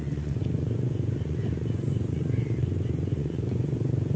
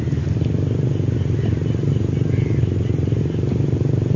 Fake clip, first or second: first